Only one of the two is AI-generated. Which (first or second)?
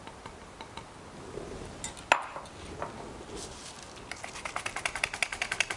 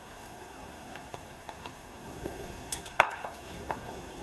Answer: second